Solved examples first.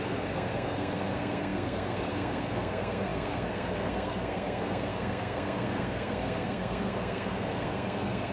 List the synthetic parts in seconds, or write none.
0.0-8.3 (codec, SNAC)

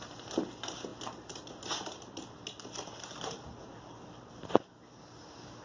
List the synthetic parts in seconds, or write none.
none

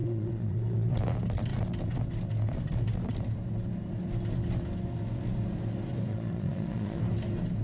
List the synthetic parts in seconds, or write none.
0.0-0.9 (vocoder, Vocos); 6.1-7.0

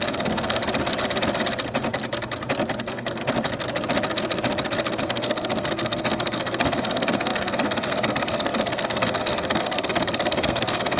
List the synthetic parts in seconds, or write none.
0.0-0.6 (codec, SNAC); 2.8-3.2; 5.0-11.0